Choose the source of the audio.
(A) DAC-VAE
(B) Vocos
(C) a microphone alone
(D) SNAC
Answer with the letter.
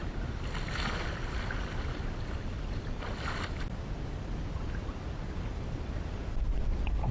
C